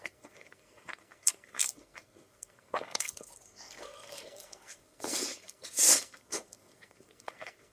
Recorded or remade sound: remade